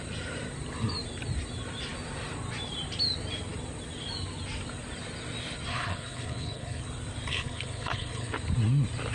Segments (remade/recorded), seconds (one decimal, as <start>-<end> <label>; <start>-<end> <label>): 0.0-5.7 recorded; 5.7-6.8 remade; 6.8-7.3 recorded; 7.3-8.3 remade; 8.3-9.1 recorded